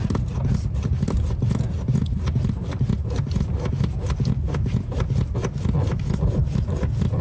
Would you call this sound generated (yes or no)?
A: no